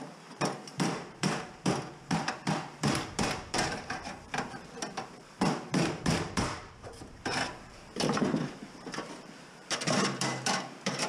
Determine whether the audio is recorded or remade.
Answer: remade